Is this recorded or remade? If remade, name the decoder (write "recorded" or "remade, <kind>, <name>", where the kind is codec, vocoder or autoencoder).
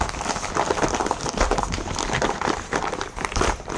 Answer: recorded